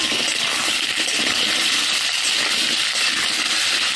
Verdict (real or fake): fake